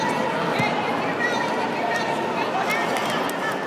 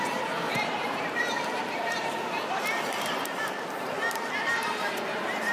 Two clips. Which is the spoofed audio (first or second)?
second